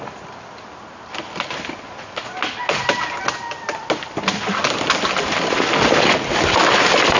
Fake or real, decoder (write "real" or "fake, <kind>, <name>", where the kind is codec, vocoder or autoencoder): real